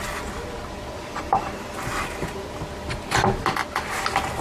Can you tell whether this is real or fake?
real